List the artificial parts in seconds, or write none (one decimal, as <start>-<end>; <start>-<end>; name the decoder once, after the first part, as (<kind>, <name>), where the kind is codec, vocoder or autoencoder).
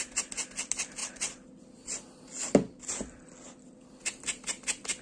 none